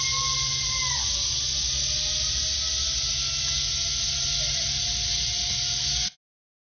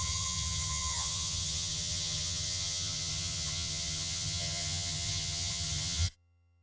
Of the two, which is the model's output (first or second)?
second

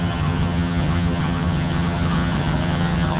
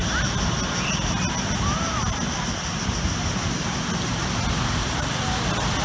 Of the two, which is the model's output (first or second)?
first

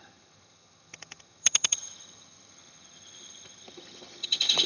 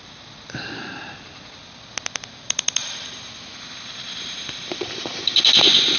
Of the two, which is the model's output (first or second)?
first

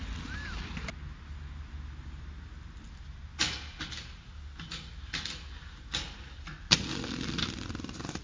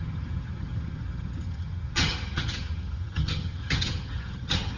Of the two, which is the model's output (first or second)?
second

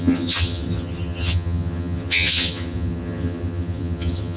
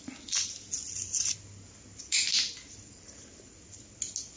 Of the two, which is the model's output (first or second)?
first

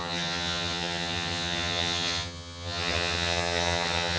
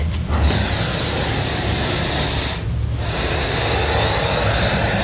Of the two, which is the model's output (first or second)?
first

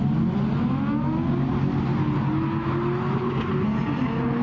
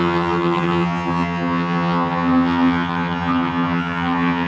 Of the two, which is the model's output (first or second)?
second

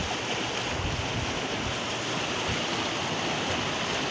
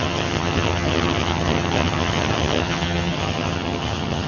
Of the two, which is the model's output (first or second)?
second